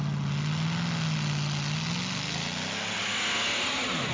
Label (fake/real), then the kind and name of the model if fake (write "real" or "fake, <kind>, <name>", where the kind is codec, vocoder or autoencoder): real